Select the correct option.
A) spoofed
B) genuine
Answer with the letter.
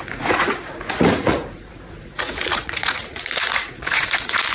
A